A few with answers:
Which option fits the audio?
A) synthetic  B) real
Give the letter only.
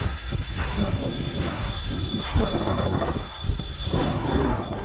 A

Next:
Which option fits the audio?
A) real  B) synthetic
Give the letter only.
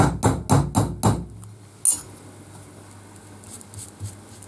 A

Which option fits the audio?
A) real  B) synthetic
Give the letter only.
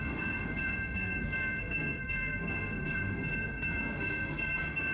B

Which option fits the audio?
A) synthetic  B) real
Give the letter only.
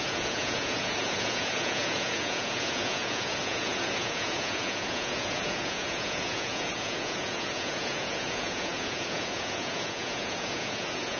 A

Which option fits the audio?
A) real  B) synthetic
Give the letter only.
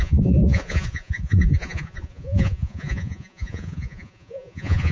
B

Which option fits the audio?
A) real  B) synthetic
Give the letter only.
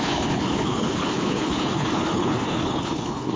B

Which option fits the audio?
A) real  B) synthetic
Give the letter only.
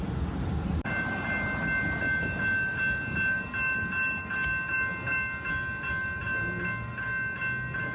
A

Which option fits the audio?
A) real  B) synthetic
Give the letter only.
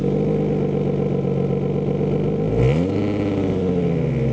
A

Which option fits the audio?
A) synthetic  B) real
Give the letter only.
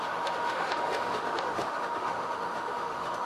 A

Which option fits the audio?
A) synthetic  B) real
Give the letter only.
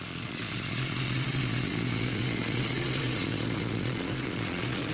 A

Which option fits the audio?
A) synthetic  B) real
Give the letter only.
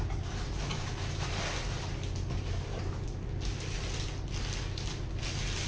B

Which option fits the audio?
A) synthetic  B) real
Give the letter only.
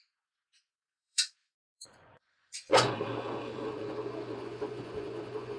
A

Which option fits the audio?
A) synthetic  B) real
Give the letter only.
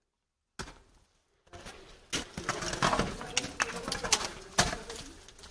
B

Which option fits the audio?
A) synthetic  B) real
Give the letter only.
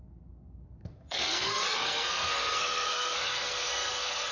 A